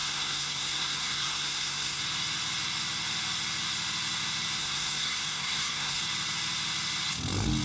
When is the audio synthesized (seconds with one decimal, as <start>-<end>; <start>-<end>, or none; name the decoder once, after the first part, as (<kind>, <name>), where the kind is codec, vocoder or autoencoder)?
0.0-2.0 (codec, SNAC); 4.6-6.0